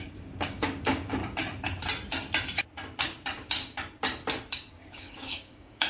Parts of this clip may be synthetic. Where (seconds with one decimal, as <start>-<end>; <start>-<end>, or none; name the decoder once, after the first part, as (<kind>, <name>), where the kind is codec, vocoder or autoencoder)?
0.0-1.2 (codec, DAC); 4.7-5.9